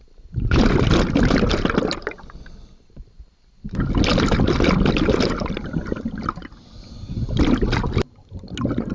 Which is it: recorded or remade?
recorded